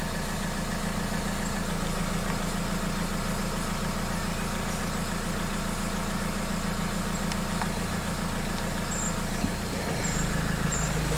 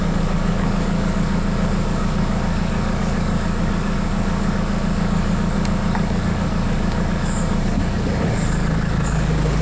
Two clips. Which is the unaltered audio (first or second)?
first